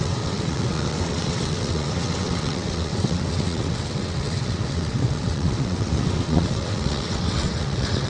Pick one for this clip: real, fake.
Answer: fake